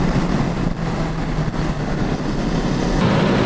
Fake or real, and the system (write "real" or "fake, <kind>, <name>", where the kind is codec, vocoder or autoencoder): real